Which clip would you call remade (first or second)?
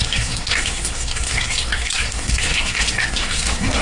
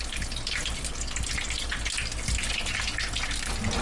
first